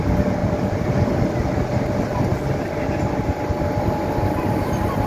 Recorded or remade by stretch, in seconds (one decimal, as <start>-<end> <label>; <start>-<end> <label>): 0.0-0.4 recorded; 0.4-1.1 remade; 1.1-5.1 recorded